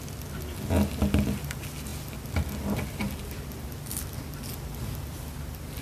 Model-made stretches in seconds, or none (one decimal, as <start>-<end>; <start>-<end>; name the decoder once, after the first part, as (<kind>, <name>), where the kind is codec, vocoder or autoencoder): none